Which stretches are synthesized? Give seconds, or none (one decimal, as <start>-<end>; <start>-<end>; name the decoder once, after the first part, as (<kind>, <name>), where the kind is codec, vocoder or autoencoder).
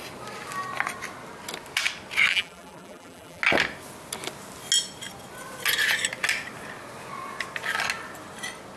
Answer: 2.3-3.4 (vocoder, BigVGAN v2)